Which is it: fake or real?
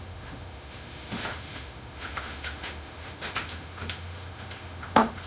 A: fake